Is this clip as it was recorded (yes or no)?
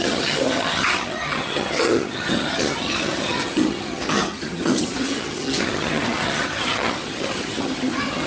no